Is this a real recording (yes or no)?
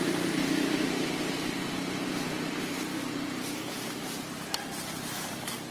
yes